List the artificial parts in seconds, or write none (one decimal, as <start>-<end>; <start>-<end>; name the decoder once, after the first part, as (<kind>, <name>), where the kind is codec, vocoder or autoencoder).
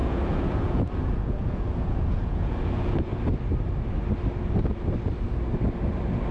0.0-3.1 (vocoder, Vocos)